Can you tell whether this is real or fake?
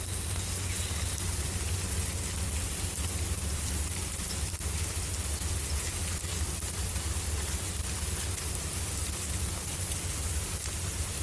real